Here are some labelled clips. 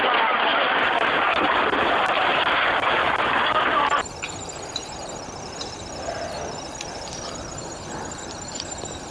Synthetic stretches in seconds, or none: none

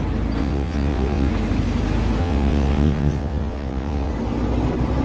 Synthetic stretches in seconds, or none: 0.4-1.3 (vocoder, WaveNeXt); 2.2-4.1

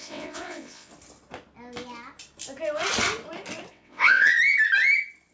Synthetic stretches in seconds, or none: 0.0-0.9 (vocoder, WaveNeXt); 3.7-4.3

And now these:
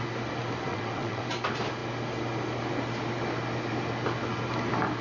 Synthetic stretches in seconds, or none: 0.7-1.2 (vocoder, WaveNeXt)

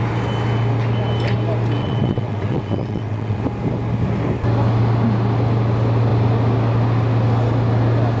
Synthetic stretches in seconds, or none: 1.8-3.4 (vocoder, WaveNeXt)

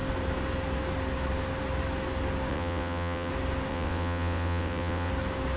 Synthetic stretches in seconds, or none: 2.5-3.3 (vocoder, WaveNeXt); 3.7-5.1